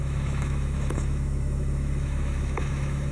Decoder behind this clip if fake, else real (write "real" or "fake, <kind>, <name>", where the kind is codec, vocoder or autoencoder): fake, autoencoder, DAC-VAE